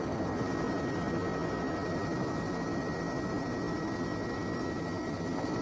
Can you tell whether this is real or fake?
real